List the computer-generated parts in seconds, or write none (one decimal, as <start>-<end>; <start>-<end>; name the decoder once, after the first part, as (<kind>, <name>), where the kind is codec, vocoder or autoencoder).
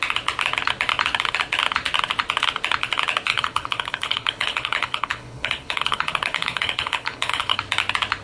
3.3-7.6 (codec, HILCodec)